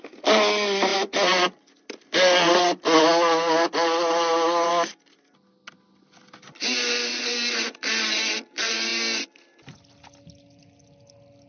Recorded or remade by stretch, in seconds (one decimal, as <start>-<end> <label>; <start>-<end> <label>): 0.0-11.5 recorded